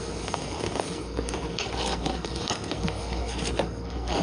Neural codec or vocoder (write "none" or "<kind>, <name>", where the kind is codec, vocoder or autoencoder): codec, SNAC